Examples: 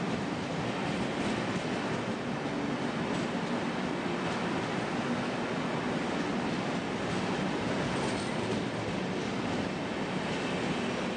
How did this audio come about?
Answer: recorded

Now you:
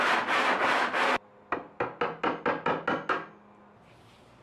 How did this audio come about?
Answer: recorded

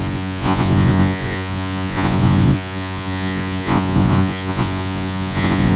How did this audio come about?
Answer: remade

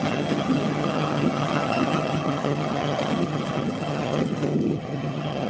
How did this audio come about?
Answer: remade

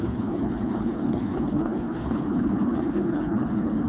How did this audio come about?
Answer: remade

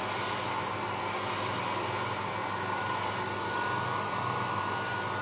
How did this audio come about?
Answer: recorded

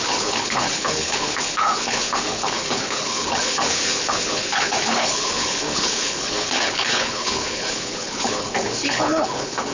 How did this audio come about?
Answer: remade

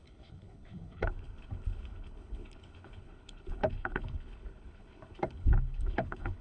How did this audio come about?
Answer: remade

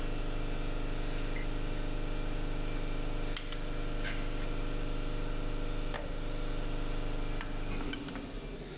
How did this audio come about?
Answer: recorded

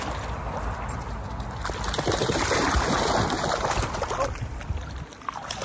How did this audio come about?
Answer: recorded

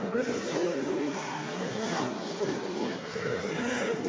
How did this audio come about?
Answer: remade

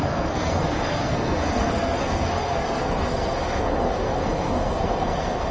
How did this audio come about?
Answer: remade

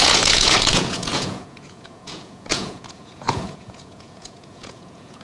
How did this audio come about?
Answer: remade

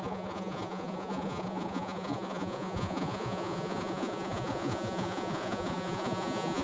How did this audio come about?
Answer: remade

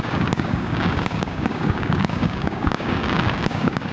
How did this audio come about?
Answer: remade